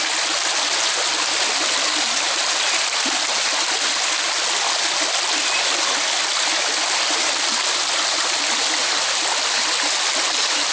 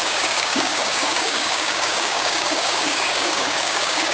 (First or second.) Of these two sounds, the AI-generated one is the second